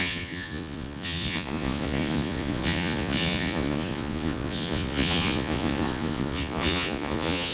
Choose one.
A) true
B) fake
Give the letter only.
B